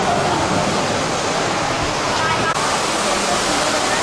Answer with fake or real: real